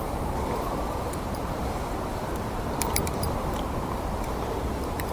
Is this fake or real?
fake